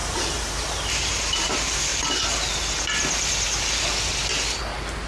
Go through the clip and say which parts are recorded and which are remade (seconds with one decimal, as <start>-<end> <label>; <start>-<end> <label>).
0.0-1.9 remade; 1.9-5.1 recorded